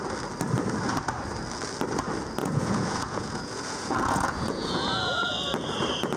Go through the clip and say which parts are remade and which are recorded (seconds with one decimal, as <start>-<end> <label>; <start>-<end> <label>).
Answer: 0.0-2.4 recorded; 2.4-5.3 remade; 5.3-6.2 recorded